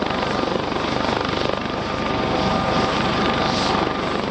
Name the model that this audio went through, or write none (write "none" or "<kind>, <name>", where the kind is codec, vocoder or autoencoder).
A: vocoder, BigVGAN v2